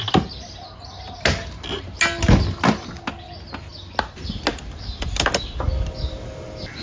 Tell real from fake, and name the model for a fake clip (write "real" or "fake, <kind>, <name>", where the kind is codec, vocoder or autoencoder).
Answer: real